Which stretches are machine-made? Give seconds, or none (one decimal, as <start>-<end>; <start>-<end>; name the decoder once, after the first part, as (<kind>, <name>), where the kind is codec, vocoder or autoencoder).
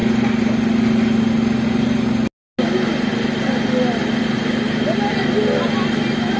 none